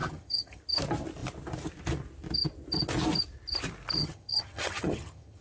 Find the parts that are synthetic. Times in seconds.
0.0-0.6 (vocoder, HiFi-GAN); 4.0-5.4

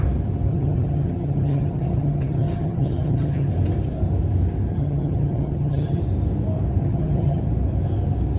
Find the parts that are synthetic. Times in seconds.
0.5-3.5 (vocoder, HiFi-GAN); 4.7-6.0; 6.8-7.4

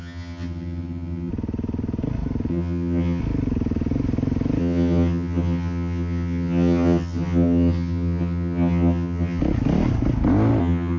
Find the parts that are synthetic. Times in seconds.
0.0-1.3 (vocoder, HiFi-GAN); 2.5-3.2; 4.6-9.4; 10.6-11.0

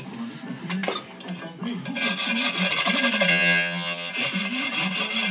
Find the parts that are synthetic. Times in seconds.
3.3-4.1 (vocoder, HiFi-GAN)